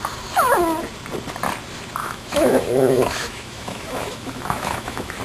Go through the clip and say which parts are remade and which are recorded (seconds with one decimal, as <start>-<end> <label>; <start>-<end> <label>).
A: 0.0-2.0 recorded; 2.0-5.2 remade